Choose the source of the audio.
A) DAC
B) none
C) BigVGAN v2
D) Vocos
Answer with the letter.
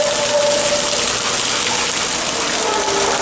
B